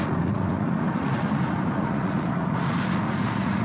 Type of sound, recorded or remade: remade